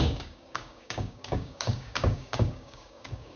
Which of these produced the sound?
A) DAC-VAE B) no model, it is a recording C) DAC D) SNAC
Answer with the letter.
C